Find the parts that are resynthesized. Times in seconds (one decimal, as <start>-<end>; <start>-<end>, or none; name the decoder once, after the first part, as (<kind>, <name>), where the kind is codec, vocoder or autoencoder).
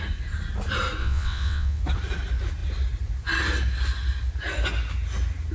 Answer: 1.0-1.8 (vocoder, WaveNeXt)